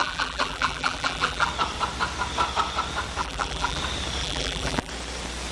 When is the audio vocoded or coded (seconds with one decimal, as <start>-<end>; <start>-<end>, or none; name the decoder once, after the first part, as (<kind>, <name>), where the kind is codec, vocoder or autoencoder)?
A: 0.0-1.5 (vocoder, BigVGAN v2); 3.2-3.8; 4.2-4.9